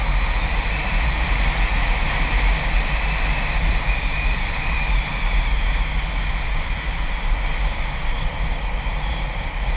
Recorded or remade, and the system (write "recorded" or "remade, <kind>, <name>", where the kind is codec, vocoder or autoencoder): recorded